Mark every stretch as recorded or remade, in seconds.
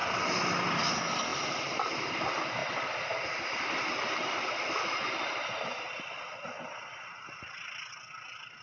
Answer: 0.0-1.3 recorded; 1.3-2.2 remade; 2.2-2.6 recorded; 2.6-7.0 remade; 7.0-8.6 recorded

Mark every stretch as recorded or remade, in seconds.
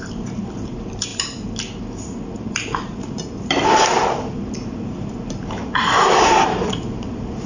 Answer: 0.0-1.1 remade; 1.1-2.4 recorded; 2.4-7.5 remade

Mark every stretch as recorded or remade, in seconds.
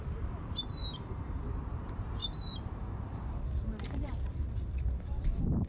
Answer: 0.0-0.8 recorded; 0.8-1.5 remade; 1.5-2.2 recorded; 2.2-5.7 remade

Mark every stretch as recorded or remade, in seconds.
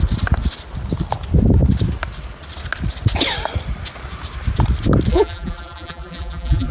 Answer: 0.0-5.1 recorded; 5.1-6.7 remade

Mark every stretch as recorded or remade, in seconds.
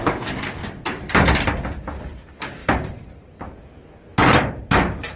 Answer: 0.0-2.6 recorded; 2.6-3.3 remade; 3.3-4.2 recorded; 4.2-5.2 remade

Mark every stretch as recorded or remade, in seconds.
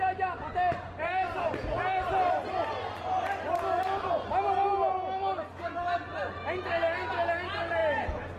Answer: 0.0-8.4 recorded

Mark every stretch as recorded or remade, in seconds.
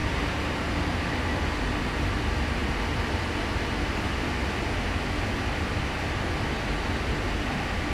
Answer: 0.0-0.7 remade; 0.7-7.9 recorded